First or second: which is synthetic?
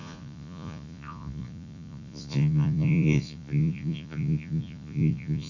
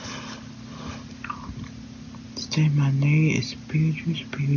first